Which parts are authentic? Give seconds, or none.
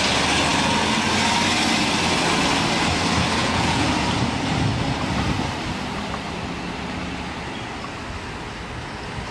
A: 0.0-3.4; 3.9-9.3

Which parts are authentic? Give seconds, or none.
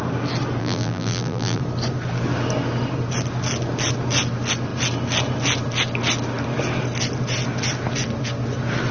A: 0.0-0.6; 1.6-8.9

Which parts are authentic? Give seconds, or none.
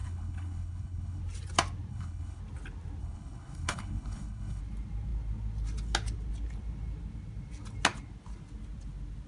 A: 1.2-1.9; 2.4-3.0; 4.6-9.3